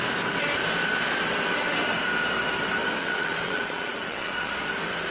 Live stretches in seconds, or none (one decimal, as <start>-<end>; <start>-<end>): 0.0-3.0; 4.5-5.1